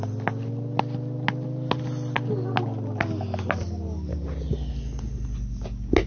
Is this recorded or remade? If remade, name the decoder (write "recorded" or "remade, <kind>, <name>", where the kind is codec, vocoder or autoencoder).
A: recorded